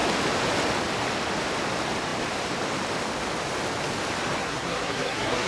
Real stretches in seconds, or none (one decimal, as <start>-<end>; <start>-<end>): 0.0-4.4